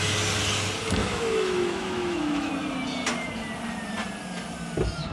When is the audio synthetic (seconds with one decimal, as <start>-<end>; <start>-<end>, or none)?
1.0-2.5